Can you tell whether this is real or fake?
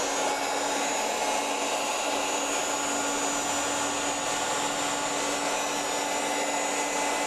real